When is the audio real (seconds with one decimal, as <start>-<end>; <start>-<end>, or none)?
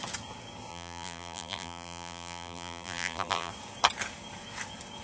0.0-0.7; 3.5-5.0